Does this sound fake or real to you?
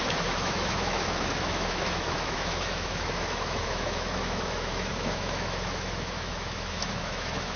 fake